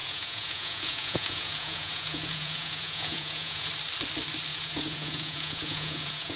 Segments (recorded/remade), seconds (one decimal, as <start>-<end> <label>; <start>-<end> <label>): 0.0-3.7 remade; 3.7-4.5 recorded; 4.5-6.4 remade